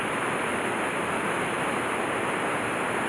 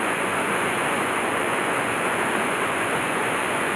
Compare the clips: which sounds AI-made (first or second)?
second